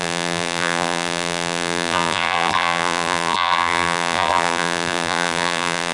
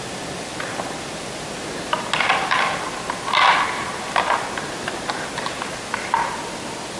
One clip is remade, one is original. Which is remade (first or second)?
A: first